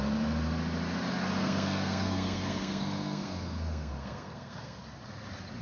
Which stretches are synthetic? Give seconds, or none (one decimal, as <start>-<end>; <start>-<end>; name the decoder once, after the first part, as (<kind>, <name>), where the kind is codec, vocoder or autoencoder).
1.4-4.8 (codec, SNAC)